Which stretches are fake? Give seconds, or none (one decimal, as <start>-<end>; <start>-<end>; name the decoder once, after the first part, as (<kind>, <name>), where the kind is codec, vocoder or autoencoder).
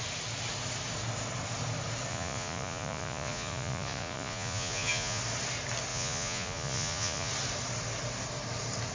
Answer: 2.1-5.2 (vocoder, Vocos); 5.9-7.3